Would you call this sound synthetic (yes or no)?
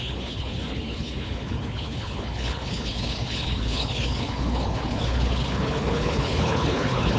yes